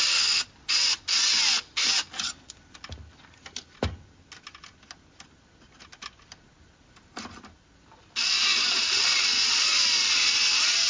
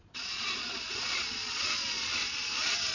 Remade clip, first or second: second